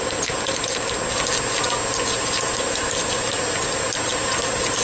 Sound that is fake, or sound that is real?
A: real